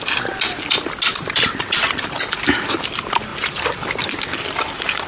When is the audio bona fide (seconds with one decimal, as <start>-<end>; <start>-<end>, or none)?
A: 0.0-5.1